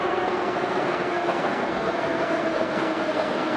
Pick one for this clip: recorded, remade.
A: remade